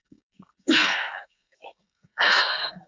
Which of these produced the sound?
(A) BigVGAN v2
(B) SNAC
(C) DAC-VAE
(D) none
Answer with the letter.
B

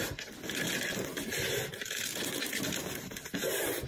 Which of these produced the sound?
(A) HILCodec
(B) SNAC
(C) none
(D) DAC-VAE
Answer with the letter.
C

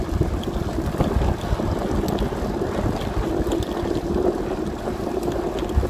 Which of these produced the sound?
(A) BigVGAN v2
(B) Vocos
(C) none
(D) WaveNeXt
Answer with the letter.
C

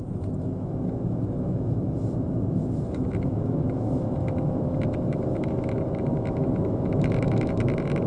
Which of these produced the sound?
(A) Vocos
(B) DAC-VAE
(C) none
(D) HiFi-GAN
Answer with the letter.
B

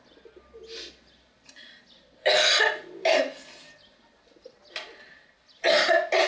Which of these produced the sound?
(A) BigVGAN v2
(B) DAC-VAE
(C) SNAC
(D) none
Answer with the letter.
D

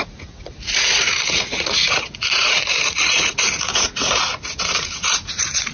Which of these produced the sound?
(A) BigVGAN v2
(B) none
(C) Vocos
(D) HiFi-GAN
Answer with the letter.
C